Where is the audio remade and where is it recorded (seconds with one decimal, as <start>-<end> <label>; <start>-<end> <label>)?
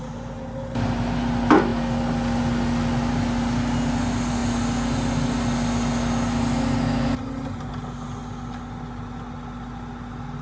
0.0-10.4 recorded